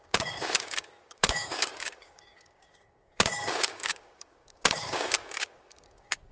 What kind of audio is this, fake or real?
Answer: fake